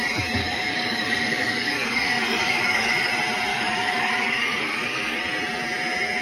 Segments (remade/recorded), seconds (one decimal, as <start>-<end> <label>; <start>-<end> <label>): 0.0-0.4 recorded; 0.4-3.1 remade; 3.1-3.5 recorded; 3.5-5.2 remade; 5.2-6.2 recorded